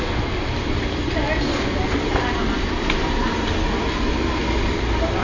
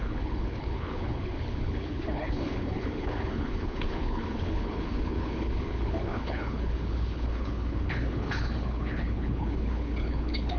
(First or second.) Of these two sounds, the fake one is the second